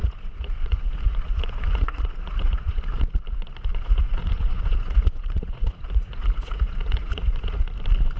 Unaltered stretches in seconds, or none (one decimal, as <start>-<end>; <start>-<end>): 2.8-3.7; 7.6-8.2